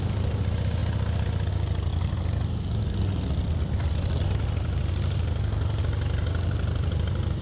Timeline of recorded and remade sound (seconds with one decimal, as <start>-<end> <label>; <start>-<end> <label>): 0.0-7.4 recorded